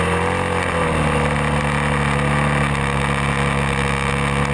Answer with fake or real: real